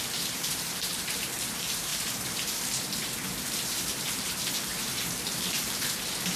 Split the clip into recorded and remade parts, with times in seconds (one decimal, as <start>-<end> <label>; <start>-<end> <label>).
0.0-6.4 remade